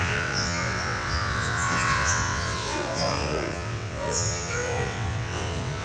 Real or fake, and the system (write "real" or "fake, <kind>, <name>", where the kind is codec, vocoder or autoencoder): fake, vocoder, WaveNeXt